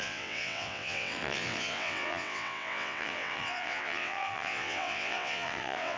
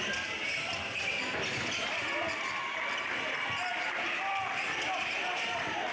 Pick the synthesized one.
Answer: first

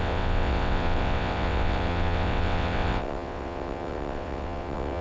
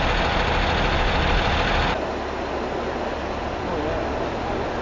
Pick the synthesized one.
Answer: first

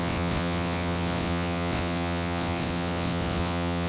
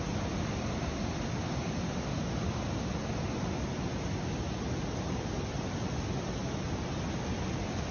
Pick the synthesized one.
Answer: first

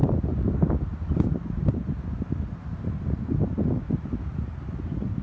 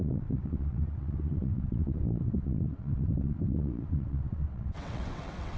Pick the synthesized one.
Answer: second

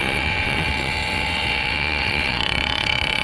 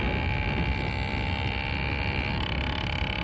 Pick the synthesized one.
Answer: first